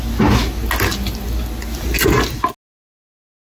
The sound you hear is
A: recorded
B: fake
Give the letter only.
A